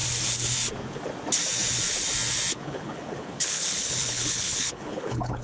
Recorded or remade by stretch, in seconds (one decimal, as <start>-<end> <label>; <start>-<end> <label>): 0.0-2.5 recorded; 2.5-5.4 remade